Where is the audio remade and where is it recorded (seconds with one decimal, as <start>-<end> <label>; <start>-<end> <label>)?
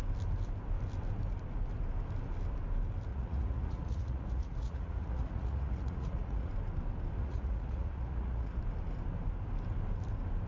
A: 0.0-3.1 recorded; 3.1-6.5 remade; 6.5-7.2 recorded; 7.2-8.6 remade; 8.6-10.5 recorded